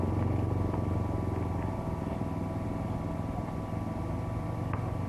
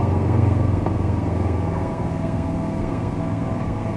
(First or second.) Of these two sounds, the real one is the first